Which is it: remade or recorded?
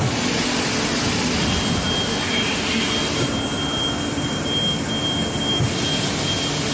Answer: recorded